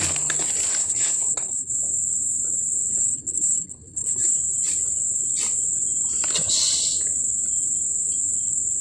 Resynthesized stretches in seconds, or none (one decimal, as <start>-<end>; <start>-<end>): 0.8-1.7; 2.9-4.4